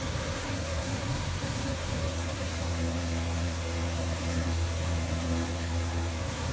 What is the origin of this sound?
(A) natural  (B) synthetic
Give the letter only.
B